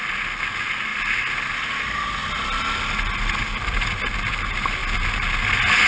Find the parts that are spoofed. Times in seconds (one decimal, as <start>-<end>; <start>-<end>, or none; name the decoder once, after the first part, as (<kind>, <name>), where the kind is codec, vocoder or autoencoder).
none